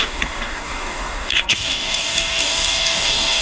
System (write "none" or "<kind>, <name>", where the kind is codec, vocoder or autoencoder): codec, DAC